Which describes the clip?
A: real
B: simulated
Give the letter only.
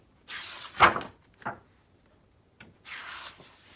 A